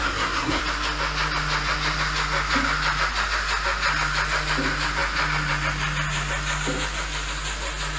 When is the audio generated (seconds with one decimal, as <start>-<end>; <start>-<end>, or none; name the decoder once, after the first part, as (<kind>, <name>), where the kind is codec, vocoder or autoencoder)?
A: 0.0-0.6 (codec, SNAC)